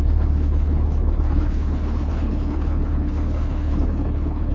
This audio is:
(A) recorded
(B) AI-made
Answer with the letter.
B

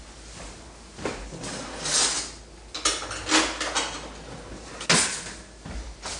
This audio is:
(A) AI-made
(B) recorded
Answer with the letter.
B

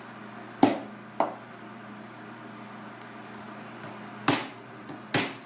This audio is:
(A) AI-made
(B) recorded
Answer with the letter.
B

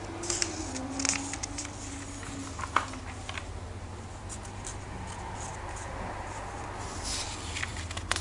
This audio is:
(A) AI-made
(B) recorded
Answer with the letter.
B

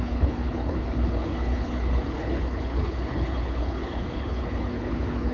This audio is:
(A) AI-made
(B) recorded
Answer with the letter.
A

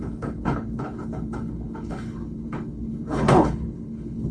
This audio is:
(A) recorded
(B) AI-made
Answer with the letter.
B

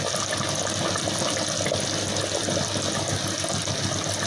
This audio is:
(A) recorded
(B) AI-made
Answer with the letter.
A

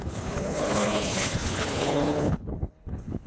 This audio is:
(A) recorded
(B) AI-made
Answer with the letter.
B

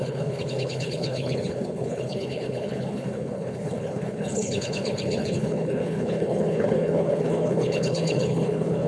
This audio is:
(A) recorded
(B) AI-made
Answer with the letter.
B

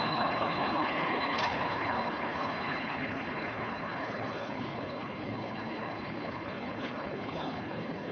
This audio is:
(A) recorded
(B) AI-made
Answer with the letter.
B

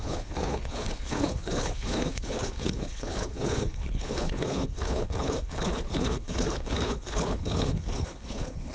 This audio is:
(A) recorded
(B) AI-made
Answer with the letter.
B